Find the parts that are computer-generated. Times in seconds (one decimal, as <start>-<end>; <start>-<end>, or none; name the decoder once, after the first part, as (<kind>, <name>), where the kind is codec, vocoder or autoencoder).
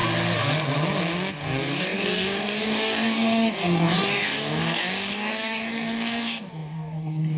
1.3-7.4 (codec, DAC)